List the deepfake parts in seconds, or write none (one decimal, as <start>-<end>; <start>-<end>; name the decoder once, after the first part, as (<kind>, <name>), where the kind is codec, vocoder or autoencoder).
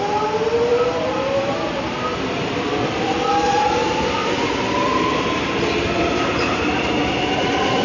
none